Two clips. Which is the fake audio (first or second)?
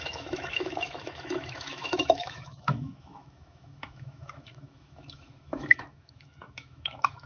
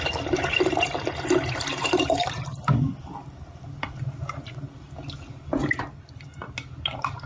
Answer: first